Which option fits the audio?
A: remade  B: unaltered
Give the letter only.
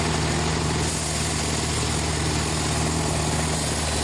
B